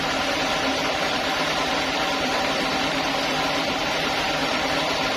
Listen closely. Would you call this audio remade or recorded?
remade